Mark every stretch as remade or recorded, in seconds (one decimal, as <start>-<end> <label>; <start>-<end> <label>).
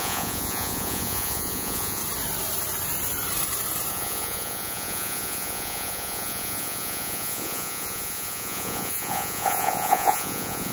0.0-2.0 remade; 2.0-3.9 recorded; 3.9-10.7 remade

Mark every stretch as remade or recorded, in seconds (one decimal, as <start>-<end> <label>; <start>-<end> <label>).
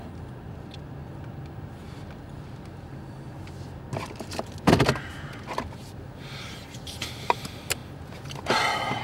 0.0-9.0 recorded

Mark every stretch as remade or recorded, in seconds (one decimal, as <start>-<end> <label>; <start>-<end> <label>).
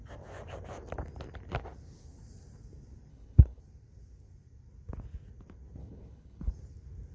0.0-3.1 recorded; 3.1-3.6 remade; 3.6-5.8 recorded; 5.8-6.5 remade; 6.5-7.1 recorded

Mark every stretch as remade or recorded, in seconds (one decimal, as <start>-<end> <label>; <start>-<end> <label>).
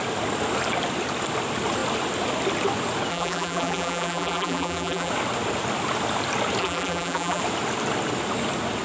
0.0-3.1 recorded; 3.1-5.1 remade; 5.1-6.6 recorded; 6.6-7.4 remade; 7.4-8.8 recorded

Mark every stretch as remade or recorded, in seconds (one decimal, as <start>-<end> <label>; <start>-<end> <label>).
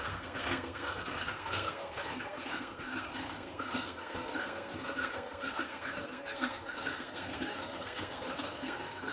0.0-9.1 remade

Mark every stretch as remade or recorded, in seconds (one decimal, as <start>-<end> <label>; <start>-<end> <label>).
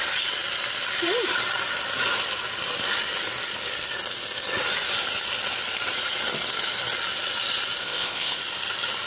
0.0-7.8 recorded; 7.8-8.4 remade; 8.4-9.1 recorded